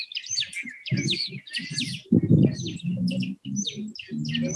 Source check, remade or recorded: recorded